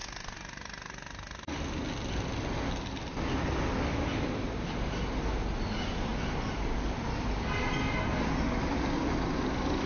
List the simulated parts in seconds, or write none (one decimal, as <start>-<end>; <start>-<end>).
none